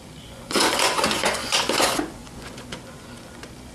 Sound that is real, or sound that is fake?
fake